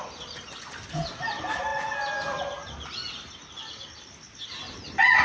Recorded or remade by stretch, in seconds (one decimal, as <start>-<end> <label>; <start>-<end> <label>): 0.0-5.2 recorded